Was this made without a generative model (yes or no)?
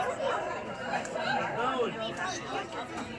yes